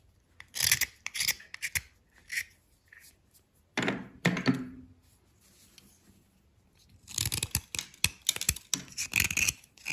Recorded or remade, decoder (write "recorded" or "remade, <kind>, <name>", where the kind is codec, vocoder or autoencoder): recorded